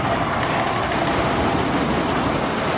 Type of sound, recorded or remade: recorded